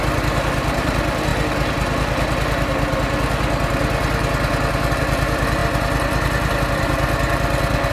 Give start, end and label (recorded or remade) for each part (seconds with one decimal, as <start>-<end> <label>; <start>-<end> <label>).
0.0-1.3 remade; 1.3-4.9 recorded; 4.9-5.6 remade; 5.6-6.6 recorded; 6.6-7.9 remade